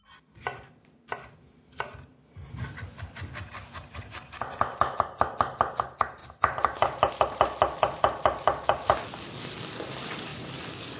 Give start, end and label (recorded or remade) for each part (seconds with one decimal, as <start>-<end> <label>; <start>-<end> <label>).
0.0-11.0 recorded